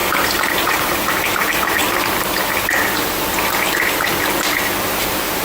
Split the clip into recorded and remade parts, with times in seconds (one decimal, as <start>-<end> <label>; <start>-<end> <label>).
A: 0.0-1.8 remade; 1.8-5.0 recorded; 5.0-5.4 remade